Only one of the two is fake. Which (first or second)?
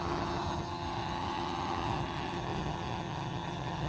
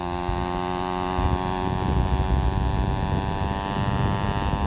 first